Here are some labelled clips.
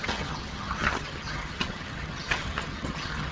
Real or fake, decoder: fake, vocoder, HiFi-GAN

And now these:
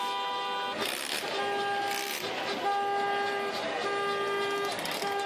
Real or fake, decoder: real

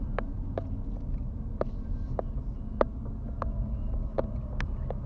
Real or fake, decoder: real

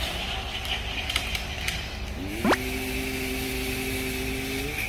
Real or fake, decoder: real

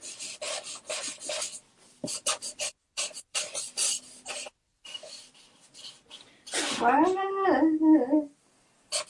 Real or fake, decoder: fake, vocoder, BigVGAN v2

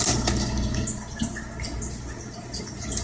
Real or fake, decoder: real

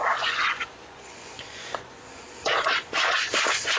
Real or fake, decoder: fake, vocoder, Vocos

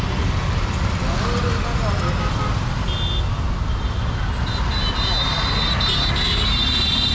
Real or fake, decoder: real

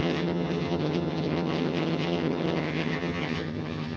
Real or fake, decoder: fake, vocoder, HiFi-GAN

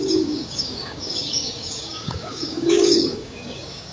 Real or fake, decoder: fake, codec, DAC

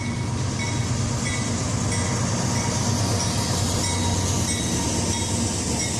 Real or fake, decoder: real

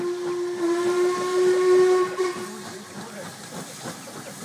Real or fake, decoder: real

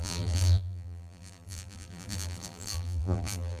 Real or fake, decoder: fake, vocoder, BigVGAN v2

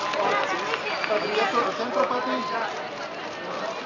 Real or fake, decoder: real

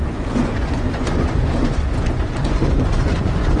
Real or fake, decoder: fake, vocoder, Vocos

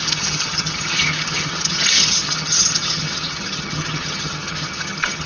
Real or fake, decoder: fake, vocoder, HiFi-GAN